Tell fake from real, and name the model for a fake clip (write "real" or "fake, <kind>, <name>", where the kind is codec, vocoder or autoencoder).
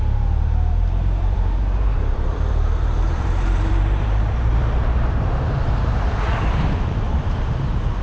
fake, vocoder, BigVGAN v2